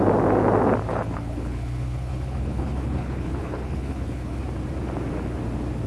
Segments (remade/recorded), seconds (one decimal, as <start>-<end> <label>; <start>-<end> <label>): 0.0-0.9 recorded; 0.9-4.4 remade; 4.4-5.9 recorded